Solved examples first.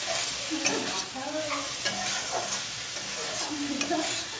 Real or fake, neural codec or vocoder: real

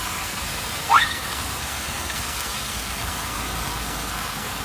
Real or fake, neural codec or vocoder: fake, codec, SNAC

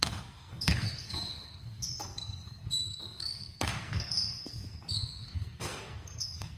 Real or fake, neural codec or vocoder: fake, codec, SNAC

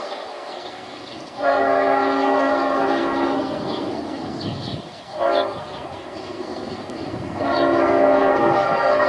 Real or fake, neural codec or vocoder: fake, codec, SNAC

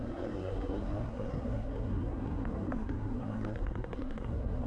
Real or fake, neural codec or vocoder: fake, codec, SNAC